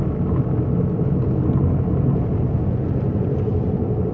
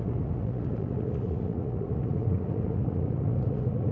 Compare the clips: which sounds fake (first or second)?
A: second